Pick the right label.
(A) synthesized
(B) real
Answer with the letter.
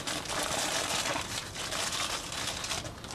A